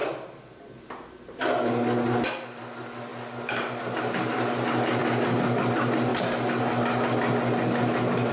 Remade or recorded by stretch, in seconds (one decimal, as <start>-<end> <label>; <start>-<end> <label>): 0.0-2.6 recorded; 2.6-5.0 remade; 5.0-5.6 recorded; 5.6-6.1 remade; 6.1-8.3 recorded